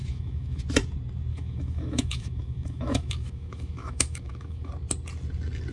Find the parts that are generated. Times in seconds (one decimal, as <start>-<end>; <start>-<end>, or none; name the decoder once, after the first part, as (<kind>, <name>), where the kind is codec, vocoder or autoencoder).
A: 0.0-0.6 (autoencoder, DAC-VAE); 1.3-4.7